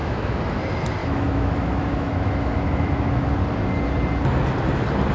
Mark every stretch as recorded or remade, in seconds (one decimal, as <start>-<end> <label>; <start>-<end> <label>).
0.0-0.6 remade; 0.6-1.0 recorded; 1.0-3.3 remade; 3.3-5.1 recorded